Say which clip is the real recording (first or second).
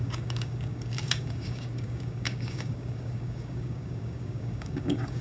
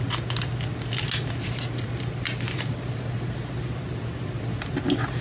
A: second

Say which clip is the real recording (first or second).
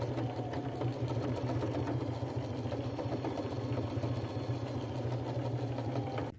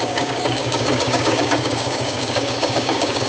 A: first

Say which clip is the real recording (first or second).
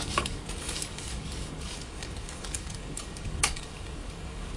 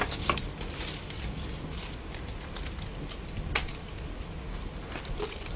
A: second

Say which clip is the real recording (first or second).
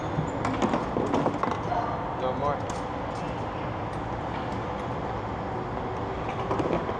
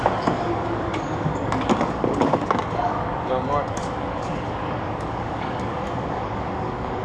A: first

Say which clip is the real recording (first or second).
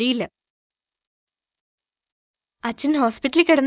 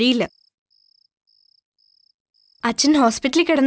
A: second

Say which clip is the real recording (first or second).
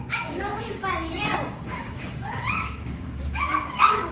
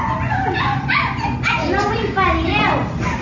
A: second